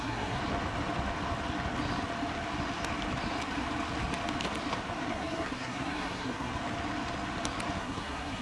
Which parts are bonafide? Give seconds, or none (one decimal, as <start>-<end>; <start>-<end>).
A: 0.4-5.1; 6.5-7.8